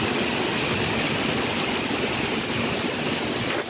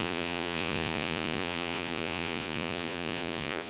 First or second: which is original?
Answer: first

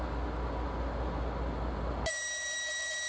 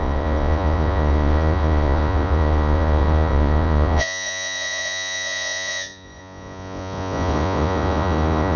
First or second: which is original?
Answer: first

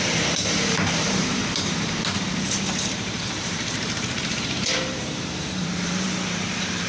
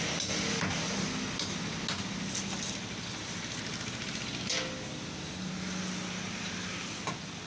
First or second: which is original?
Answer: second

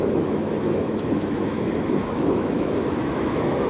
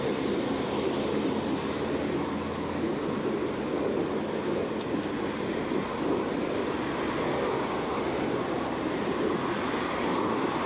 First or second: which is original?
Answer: second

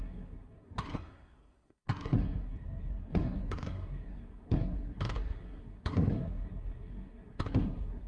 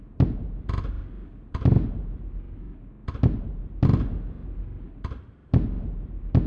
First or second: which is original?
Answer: second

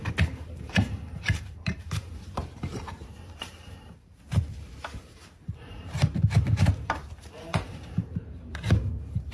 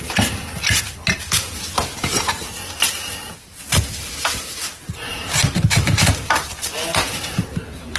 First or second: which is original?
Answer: second